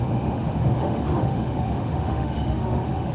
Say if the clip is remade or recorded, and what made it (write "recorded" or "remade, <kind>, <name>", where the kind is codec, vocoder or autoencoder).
remade, autoencoder, DAC-VAE